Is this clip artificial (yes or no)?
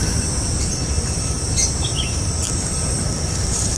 yes